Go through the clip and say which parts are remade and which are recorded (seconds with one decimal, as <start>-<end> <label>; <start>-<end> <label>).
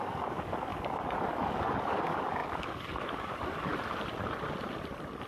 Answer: 0.0-3.7 remade; 3.7-5.3 recorded